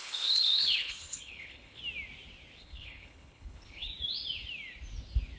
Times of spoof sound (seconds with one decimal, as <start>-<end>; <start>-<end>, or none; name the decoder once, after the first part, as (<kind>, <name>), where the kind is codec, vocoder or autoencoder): 0.0-1.8 (codec, HILCodec); 2.6-3.9